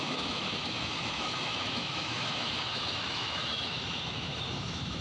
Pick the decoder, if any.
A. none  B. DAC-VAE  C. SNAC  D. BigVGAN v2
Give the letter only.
B